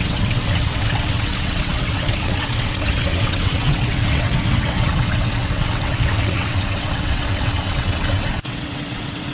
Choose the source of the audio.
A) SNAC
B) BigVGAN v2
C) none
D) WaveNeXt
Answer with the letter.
D